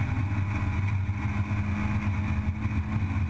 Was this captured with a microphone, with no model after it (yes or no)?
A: yes